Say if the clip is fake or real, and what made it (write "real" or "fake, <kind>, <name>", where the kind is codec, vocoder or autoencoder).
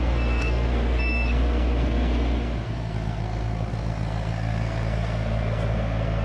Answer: fake, codec, SNAC